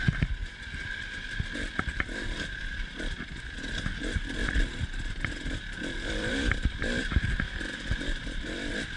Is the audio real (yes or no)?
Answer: no